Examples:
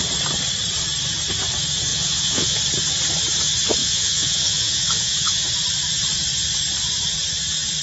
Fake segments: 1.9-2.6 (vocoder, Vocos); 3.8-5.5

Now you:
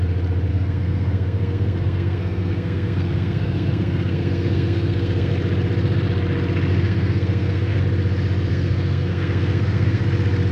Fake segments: 0.5-5.3 (codec, SNAC); 6.7-7.8; 8.5-10.0

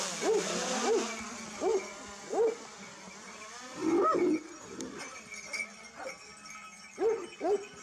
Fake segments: none

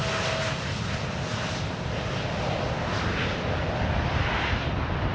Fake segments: none